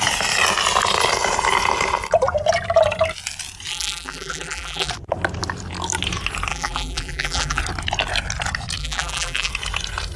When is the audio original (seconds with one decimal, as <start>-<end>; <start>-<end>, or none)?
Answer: 0.0-3.7; 4.9-6.5; 7.6-8.8; 9.5-10.2